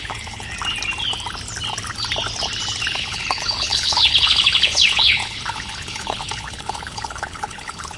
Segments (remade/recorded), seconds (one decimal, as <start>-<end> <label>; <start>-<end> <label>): 0.0-0.5 remade; 0.5-2.9 recorded; 2.9-8.0 remade